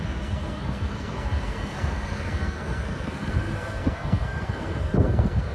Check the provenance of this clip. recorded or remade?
remade